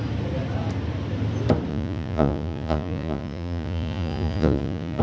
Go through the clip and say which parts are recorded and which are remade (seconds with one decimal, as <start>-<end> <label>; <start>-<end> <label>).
0.0-1.7 recorded; 1.7-5.0 remade